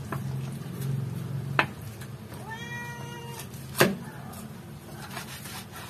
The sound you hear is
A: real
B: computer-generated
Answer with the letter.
A